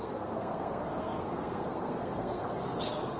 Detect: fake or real fake